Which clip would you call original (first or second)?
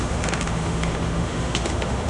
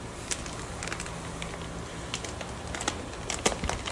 second